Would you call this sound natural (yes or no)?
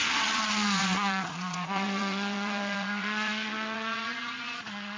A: no